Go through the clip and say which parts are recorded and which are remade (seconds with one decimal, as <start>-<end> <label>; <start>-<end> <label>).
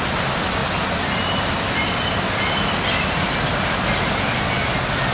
0.0-5.1 recorded